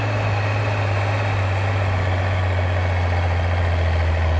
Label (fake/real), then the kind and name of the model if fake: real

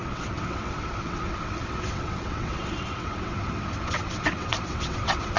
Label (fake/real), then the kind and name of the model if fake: fake, vocoder, WaveNeXt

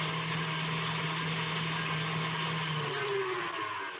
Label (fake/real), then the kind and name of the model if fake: real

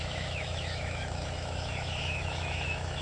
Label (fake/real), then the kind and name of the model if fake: fake, autoencoder, DAC-VAE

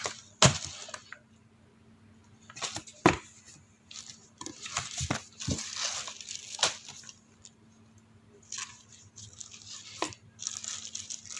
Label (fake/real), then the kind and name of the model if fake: real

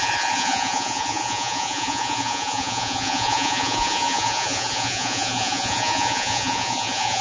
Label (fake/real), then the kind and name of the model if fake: fake, vocoder, Vocos